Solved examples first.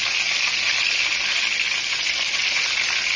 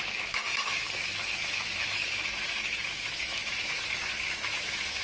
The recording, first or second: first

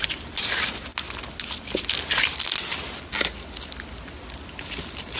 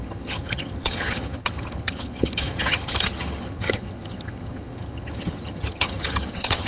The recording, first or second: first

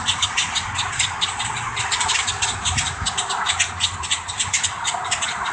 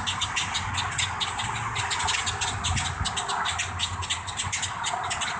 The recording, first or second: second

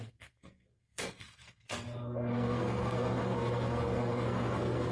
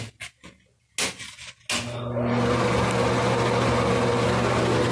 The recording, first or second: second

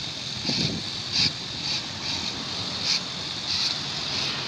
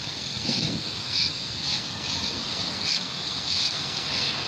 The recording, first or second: first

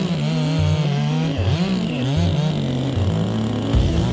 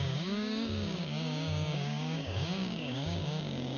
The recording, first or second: first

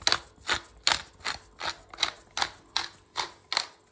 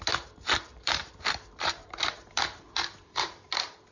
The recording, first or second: first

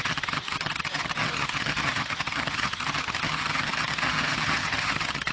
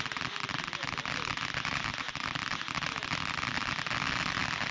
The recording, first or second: second